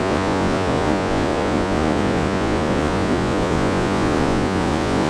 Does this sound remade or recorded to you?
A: remade